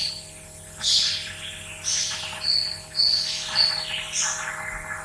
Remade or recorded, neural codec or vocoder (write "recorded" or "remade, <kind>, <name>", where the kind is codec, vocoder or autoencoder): recorded